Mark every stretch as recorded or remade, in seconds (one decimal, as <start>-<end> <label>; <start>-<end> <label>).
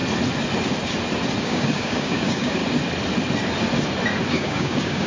0.0-1.4 recorded; 1.4-2.6 remade; 2.6-4.3 recorded; 4.3-5.1 remade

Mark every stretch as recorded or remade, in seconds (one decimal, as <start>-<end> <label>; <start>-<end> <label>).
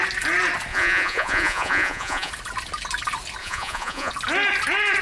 0.0-0.7 recorded; 0.7-2.3 remade; 2.3-3.4 recorded; 3.4-4.1 remade; 4.1-5.0 recorded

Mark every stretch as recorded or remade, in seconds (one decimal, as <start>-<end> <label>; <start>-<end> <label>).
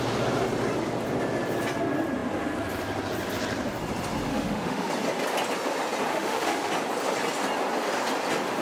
0.0-4.3 recorded; 4.3-4.9 remade; 4.9-6.1 recorded; 6.1-6.7 remade; 6.7-8.6 recorded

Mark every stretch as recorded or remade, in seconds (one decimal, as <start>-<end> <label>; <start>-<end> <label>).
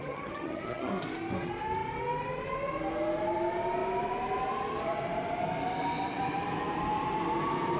0.0-0.9 remade; 0.9-7.8 recorded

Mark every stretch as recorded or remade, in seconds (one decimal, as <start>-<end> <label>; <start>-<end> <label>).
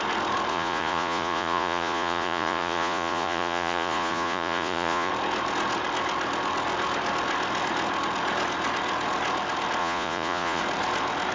0.0-0.5 recorded; 0.5-5.1 remade; 5.1-9.8 recorded; 9.8-10.6 remade; 10.6-11.3 recorded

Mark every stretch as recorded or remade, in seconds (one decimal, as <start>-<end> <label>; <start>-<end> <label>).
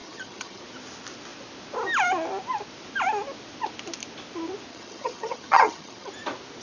0.0-0.6 remade; 0.6-4.7 recorded; 4.7-6.1 remade; 6.1-6.6 recorded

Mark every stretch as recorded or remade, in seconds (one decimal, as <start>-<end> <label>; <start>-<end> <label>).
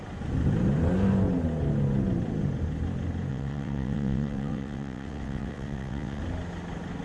0.0-3.3 recorded; 3.3-6.2 remade; 6.2-7.0 recorded